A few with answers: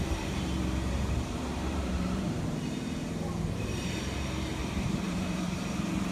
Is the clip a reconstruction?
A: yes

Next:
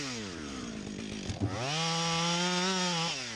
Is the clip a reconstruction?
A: no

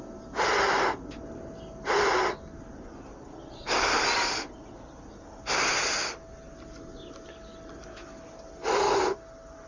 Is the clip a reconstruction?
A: no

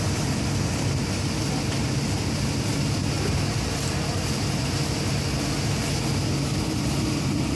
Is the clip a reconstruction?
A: no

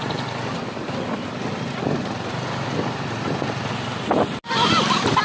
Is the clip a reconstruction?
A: no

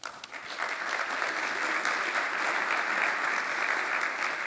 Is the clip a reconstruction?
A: no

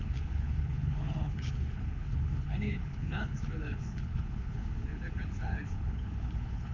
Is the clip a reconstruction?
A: yes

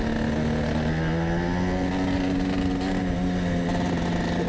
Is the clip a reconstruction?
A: no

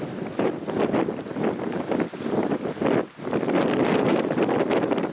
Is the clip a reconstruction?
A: no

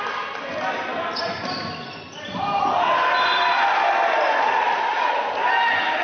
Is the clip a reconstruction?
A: no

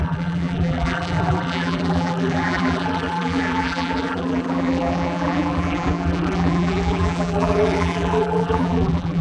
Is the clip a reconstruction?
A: yes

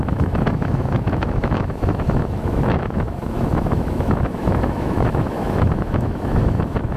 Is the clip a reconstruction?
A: yes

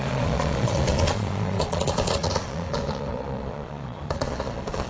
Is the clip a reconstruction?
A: yes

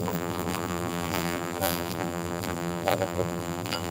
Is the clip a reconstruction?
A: yes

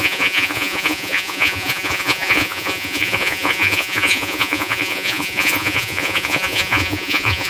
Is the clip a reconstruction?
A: yes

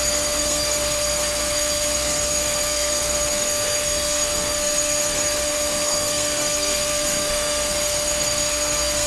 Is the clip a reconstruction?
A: yes